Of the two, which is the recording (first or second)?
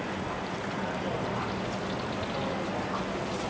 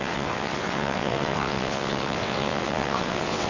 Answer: first